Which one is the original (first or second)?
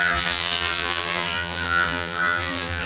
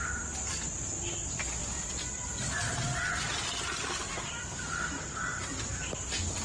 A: second